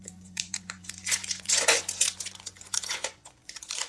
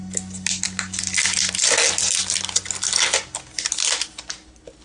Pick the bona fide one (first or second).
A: second